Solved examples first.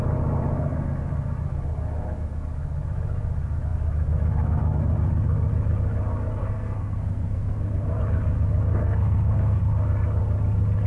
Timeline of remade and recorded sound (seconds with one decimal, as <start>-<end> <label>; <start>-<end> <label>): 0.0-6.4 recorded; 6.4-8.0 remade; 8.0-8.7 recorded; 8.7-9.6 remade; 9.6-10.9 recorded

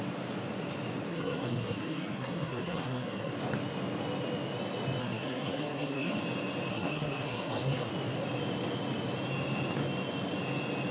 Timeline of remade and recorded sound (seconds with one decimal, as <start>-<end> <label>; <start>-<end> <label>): 0.0-1.1 recorded; 1.1-3.3 remade; 3.3-5.0 recorded; 5.0-6.2 remade; 6.2-6.7 recorded; 6.7-7.9 remade; 7.9-10.9 recorded

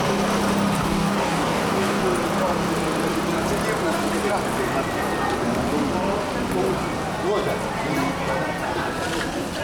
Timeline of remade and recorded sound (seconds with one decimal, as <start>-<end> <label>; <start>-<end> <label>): 0.0-0.8 recorded; 0.8-2.0 remade; 2.0-9.6 recorded

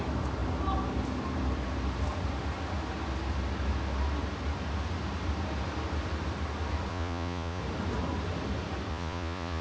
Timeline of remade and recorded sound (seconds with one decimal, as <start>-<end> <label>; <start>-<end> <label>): 0.0-6.9 recorded; 6.9-7.6 remade; 7.6-8.9 recorded; 8.9-9.6 remade

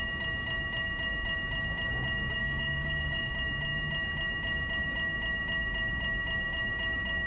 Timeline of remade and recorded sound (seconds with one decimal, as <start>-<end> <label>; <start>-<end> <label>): 0.0-2.4 recorded; 2.4-3.3 remade; 3.3-7.3 recorded

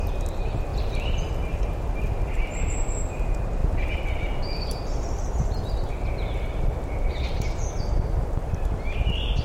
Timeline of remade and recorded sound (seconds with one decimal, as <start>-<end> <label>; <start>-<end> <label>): 0.0-0.7 recorded; 0.7-1.3 remade; 1.3-3.6 recorded; 3.6-5.9 remade; 5.9-9.4 recorded